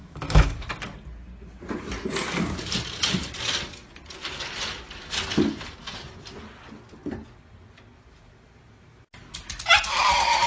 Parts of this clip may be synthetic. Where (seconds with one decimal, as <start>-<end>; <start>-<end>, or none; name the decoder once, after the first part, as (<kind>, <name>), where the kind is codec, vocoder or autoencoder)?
0.0-0.7 (autoencoder, DAC-VAE)